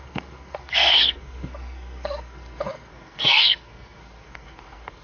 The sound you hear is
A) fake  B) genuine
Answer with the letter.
A